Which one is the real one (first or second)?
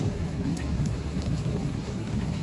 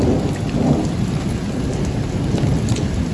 second